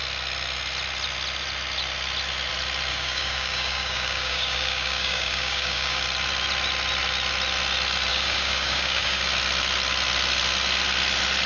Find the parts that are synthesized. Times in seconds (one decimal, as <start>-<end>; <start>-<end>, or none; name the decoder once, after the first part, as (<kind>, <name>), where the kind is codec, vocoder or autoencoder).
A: 2.9-6.0 (codec, DAC); 8.1-9.2